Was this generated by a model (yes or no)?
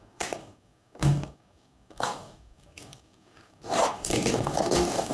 yes